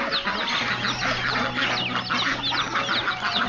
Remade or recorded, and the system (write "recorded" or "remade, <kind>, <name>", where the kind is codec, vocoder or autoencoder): recorded